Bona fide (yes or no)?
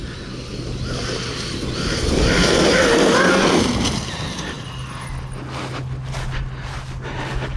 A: yes